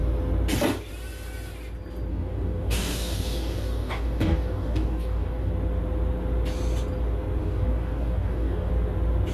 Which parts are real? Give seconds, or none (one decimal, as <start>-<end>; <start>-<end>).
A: 0.0-2.1; 5.5-7.4; 8.7-9.3